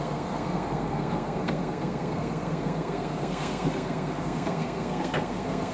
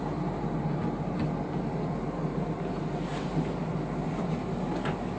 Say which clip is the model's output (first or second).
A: first